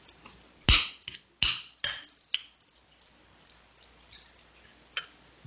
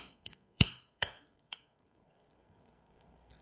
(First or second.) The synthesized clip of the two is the second